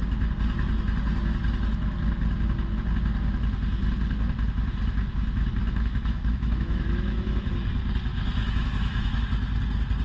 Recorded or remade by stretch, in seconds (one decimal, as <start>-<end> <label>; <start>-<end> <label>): 0.0-5.6 recorded; 5.6-7.5 remade; 7.5-8.1 recorded; 8.1-9.1 remade; 9.1-10.0 recorded